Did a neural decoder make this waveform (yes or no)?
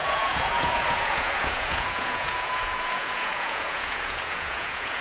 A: yes